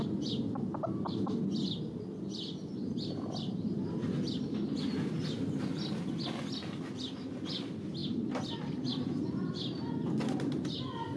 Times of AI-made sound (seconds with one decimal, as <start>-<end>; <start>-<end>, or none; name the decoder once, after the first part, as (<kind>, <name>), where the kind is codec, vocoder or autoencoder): none